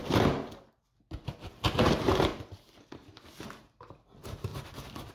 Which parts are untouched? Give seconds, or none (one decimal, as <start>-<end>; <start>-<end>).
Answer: 0.0-5.1